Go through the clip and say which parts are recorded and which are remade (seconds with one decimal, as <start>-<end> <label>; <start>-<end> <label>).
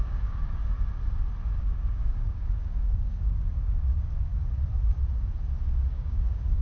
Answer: 0.0-0.6 remade; 0.6-1.6 recorded; 1.6-4.3 remade; 4.3-5.9 recorded; 5.9-6.6 remade